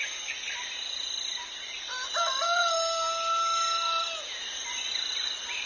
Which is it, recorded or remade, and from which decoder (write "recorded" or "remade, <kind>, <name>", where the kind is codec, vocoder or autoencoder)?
recorded